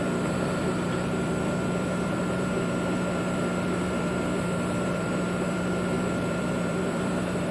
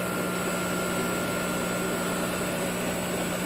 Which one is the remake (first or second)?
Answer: first